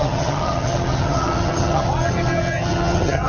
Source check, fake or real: fake